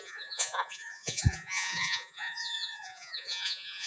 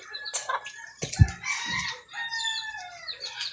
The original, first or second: second